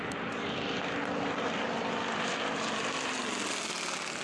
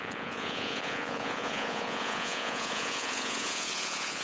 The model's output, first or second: second